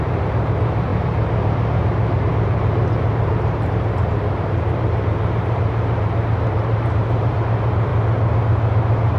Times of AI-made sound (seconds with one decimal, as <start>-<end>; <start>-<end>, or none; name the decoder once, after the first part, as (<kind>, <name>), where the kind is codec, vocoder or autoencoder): 0.0-7.9 (vocoder, BigVGAN v2)